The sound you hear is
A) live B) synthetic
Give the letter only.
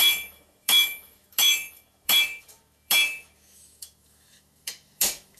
B